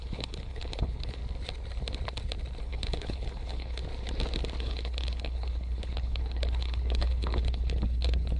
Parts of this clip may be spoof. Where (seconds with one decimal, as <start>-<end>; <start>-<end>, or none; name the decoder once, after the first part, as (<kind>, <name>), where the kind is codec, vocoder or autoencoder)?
0.0-1.2 (codec, HILCodec); 2.6-3.8; 4.6-8.4